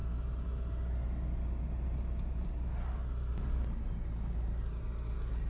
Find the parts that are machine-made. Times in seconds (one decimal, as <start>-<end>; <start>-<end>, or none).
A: none